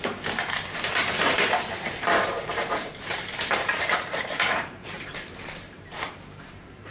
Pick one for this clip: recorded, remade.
remade